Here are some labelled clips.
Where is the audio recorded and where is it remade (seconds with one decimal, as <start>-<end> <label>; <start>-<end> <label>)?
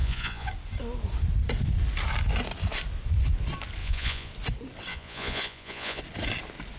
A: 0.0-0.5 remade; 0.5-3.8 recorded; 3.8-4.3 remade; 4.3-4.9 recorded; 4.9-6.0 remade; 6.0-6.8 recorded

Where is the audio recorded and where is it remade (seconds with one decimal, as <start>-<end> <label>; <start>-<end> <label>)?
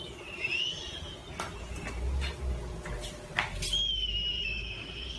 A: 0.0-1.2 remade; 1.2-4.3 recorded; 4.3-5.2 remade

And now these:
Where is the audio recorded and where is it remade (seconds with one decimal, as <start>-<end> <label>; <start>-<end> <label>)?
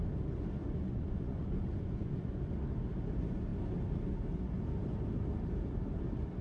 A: 0.0-0.6 recorded; 0.6-2.4 remade; 2.4-6.4 recorded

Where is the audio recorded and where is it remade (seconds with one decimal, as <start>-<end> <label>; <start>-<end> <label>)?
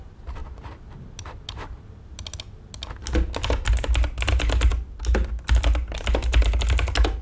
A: 0.0-7.2 recorded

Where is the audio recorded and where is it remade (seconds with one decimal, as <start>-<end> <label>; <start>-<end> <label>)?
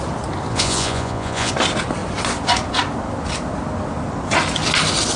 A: 0.0-0.5 recorded; 0.5-1.5 remade; 1.5-5.2 recorded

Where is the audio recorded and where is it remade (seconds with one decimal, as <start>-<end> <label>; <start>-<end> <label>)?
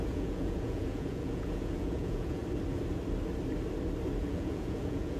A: 0.0-2.4 remade; 2.4-4.2 recorded; 4.2-5.2 remade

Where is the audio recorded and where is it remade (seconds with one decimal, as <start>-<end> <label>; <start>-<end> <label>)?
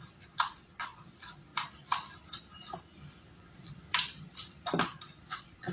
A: 0.0-1.5 remade; 1.5-3.2 recorded; 3.2-3.8 remade; 3.8-5.2 recorded; 5.2-5.7 remade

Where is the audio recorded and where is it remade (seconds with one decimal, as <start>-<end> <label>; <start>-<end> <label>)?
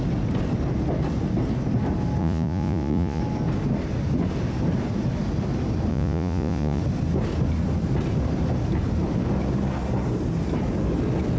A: 0.0-2.2 recorded; 2.2-3.2 remade; 3.2-5.9 recorded; 5.9-6.8 remade; 6.8-11.4 recorded